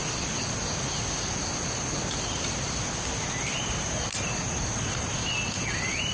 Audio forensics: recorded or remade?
recorded